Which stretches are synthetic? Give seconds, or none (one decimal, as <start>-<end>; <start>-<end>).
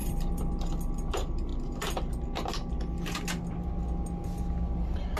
0.0-0.5